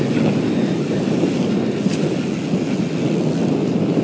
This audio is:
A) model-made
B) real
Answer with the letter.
B